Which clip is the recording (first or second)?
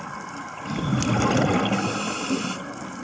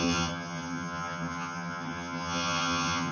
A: first